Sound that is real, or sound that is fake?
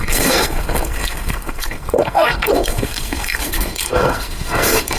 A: fake